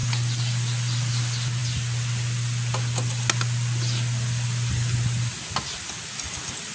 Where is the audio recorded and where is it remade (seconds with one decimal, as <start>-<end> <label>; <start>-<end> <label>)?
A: 0.0-6.7 recorded